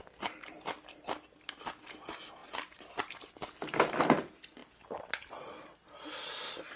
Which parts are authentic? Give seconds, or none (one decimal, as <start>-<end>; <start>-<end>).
0.0-6.8